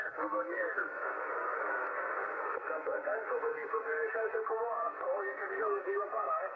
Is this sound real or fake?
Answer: fake